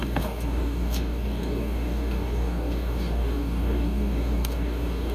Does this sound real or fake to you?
fake